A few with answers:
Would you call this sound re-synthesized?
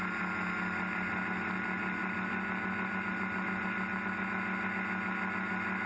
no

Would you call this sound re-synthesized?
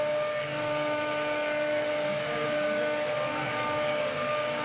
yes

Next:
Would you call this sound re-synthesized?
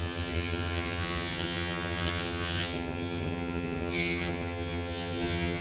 yes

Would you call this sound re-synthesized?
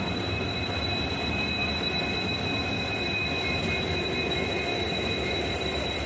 no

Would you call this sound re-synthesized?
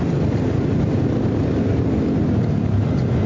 no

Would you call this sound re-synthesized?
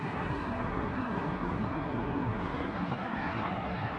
yes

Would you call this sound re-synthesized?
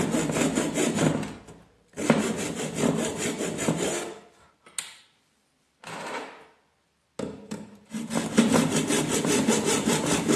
no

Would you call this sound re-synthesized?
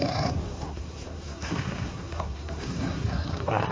yes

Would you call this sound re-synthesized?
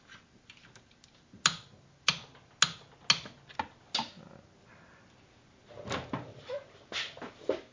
no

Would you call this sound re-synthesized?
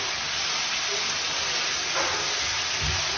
no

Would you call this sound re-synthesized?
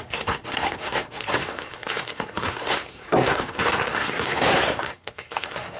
yes